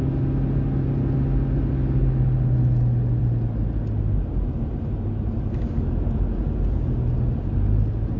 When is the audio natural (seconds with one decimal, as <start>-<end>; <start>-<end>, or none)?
0.0-8.2